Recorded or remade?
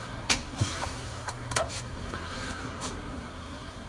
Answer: remade